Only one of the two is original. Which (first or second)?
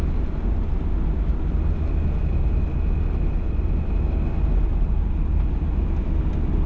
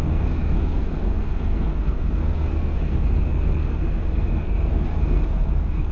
first